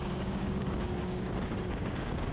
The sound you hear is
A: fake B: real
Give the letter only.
A